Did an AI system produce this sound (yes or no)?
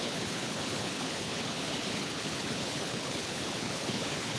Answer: yes